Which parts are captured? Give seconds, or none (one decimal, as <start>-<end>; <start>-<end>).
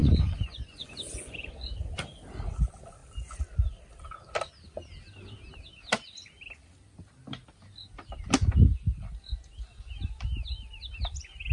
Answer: 1.5-11.5